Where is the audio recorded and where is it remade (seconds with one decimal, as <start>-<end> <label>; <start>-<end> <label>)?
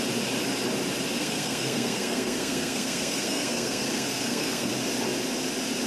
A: 0.0-1.2 recorded; 1.2-4.7 remade; 4.7-5.9 recorded